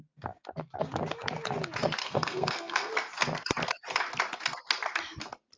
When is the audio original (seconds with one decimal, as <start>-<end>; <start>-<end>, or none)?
0.0-2.0; 2.9-5.6